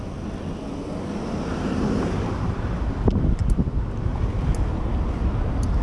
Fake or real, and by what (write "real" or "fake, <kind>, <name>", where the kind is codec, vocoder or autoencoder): real